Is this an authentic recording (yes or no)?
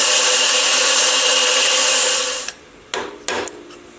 yes